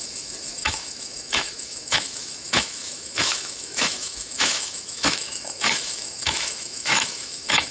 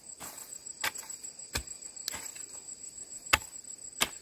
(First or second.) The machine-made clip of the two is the first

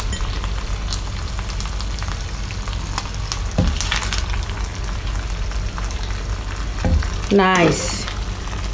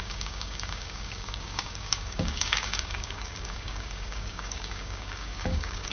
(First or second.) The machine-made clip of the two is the second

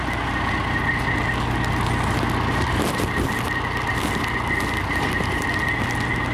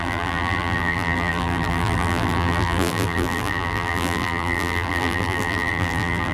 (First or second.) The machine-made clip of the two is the second